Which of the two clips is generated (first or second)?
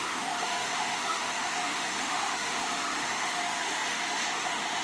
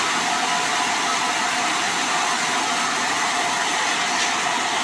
first